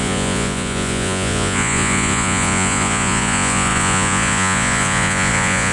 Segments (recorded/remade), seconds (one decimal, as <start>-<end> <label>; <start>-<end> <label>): 0.0-5.7 remade